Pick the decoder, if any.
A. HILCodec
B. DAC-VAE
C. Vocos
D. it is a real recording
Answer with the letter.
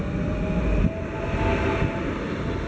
D